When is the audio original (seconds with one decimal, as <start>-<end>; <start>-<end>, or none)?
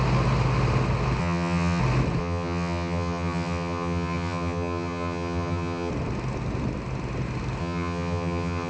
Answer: 0.0-1.2; 1.8-2.2; 5.9-7.6